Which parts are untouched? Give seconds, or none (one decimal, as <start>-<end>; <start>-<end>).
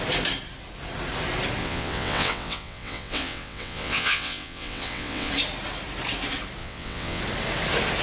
0.0-1.6; 5.3-6.6; 7.2-8.0